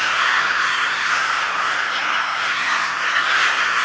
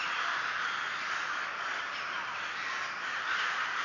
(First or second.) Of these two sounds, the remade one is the first